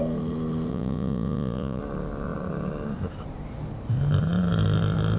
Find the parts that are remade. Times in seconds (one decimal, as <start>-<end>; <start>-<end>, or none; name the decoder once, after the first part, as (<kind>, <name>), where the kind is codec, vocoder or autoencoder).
0.7-1.8 (vocoder, Vocos)